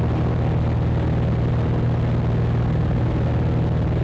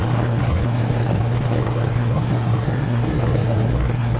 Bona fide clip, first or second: first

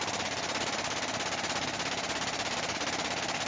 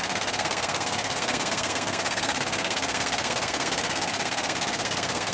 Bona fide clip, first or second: first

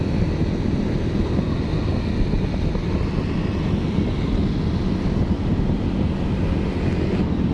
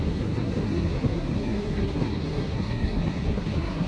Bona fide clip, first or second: first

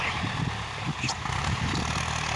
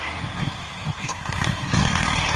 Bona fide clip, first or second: first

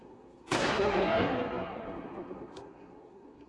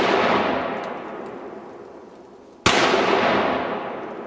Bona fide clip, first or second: second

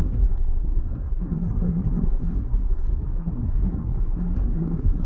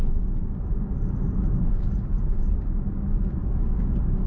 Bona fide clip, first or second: second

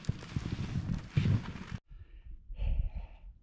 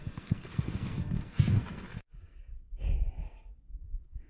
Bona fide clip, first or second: first